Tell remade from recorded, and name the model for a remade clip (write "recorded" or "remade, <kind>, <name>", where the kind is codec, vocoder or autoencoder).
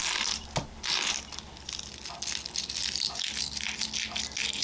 recorded